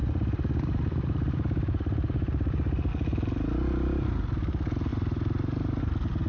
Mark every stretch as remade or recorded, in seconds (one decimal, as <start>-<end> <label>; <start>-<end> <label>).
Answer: 0.0-2.9 remade; 2.9-4.9 recorded; 4.9-5.8 remade; 5.8-6.3 recorded